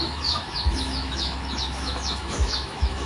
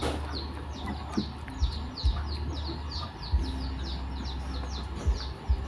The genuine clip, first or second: second